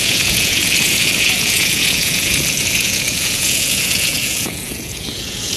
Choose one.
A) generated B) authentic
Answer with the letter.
A